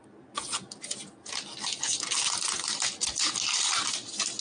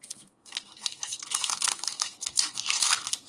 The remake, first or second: second